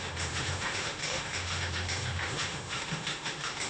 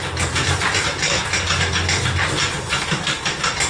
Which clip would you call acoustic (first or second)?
second